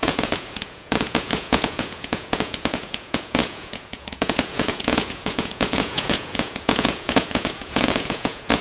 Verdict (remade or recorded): remade